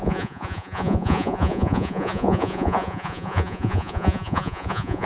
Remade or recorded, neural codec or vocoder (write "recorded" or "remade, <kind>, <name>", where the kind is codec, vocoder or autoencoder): remade, vocoder, Vocos